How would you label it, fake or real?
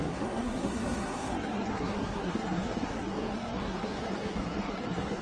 fake